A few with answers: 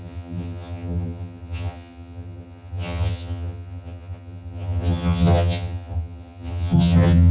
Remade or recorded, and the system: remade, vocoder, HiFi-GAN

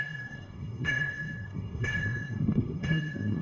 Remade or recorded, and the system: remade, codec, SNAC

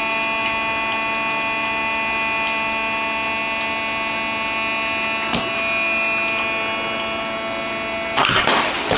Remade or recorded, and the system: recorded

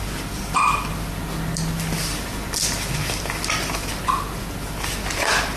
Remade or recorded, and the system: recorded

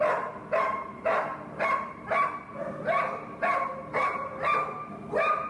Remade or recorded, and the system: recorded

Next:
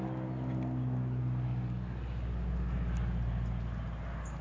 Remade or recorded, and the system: recorded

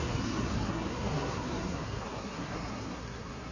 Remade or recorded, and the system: remade, codec, SNAC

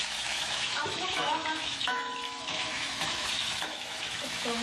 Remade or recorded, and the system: remade, autoencoder, DAC-VAE